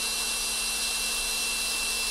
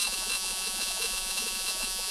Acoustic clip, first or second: first